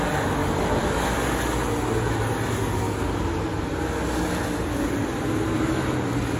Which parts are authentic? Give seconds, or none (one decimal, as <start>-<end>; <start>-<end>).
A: 0.0-6.4